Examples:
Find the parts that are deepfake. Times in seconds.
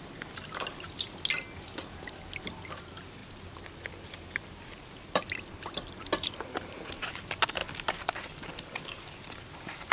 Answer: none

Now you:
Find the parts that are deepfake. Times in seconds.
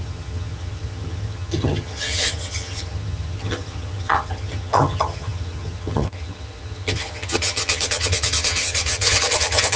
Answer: 0.0-9.8 (vocoder, HiFi-GAN)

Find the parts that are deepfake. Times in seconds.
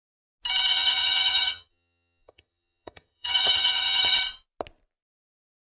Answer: 0.7-4.2 (vocoder, HiFi-GAN)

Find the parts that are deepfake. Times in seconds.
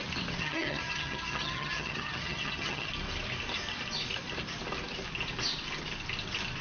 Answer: 0.4-2.9 (vocoder, HiFi-GAN)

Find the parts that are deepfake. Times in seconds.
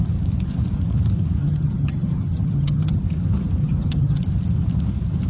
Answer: 1.4-3.0 (vocoder, HiFi-GAN); 3.6-4.2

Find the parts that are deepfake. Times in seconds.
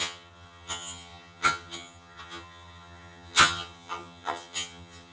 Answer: 0.0-5.1 (vocoder, HiFi-GAN)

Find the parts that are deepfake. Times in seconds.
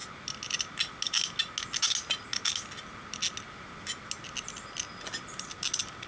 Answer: none